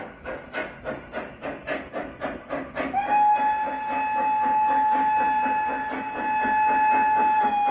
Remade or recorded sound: recorded